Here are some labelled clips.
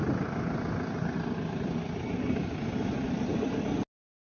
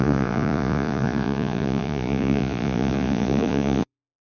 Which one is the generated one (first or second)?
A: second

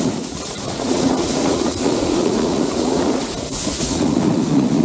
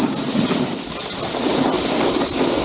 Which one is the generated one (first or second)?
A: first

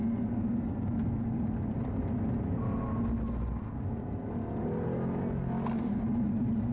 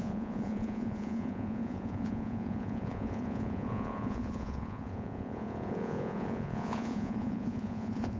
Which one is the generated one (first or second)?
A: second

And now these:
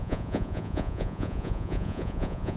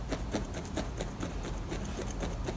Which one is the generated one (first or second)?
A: first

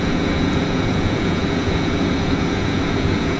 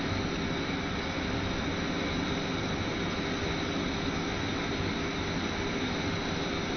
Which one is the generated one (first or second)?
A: first